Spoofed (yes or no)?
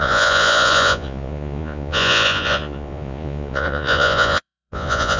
yes